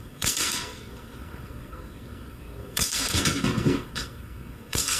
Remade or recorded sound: remade